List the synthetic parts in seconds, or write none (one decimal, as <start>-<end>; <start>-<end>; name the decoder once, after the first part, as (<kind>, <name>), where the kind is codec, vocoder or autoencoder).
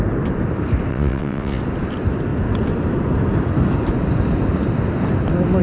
0.9-1.6 (vocoder, WaveNeXt)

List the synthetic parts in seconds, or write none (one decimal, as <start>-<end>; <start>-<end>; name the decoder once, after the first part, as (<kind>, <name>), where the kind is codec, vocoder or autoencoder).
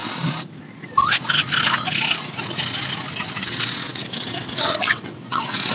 3.4-5.7 (vocoder, WaveNeXt)